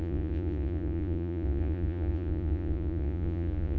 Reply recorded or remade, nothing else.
remade